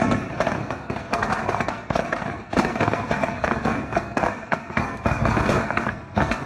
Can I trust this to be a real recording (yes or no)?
no